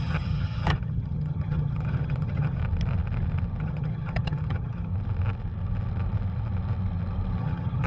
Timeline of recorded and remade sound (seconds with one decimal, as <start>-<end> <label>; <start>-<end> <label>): 0.0-2.6 remade; 2.6-3.6 recorded; 3.6-4.9 remade; 4.9-7.4 recorded; 7.4-7.9 remade